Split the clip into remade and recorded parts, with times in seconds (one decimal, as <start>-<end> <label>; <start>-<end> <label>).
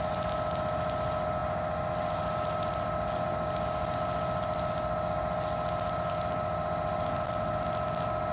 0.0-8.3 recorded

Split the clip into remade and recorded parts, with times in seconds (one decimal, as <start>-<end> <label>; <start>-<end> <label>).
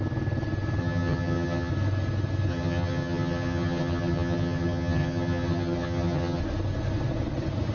0.0-0.8 recorded; 0.8-1.7 remade; 1.7-2.5 recorded; 2.5-6.4 remade; 6.4-7.7 recorded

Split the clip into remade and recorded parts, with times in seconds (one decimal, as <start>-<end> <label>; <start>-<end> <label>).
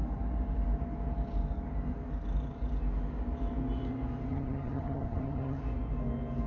0.0-4.3 recorded; 4.3-5.6 remade; 5.6-6.5 recorded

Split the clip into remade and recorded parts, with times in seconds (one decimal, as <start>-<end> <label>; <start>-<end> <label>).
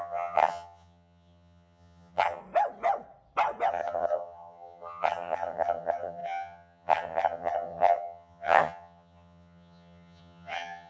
0.0-2.4 remade; 2.4-3.7 recorded; 3.7-10.9 remade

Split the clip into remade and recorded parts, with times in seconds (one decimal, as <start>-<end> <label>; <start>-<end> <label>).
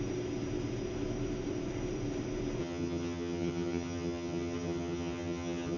0.0-2.6 recorded; 2.6-5.8 remade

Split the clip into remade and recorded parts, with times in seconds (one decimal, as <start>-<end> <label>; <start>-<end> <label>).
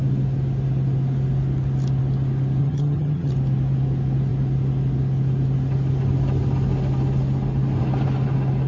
0.0-2.6 recorded; 2.6-3.3 remade; 3.3-8.7 recorded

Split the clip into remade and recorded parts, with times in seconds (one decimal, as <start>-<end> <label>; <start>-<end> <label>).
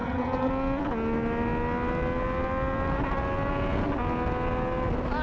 0.0-0.5 remade; 0.5-5.2 recorded